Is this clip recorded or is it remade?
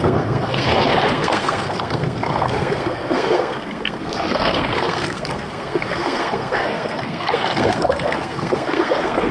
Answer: remade